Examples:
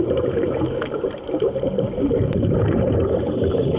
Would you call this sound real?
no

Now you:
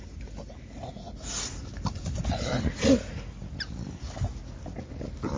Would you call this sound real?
yes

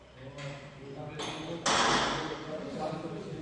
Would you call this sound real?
yes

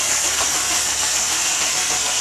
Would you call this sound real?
no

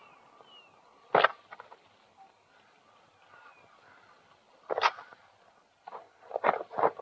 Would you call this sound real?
yes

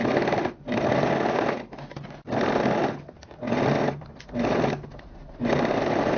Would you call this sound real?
yes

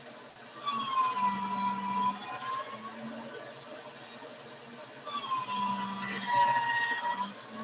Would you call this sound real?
yes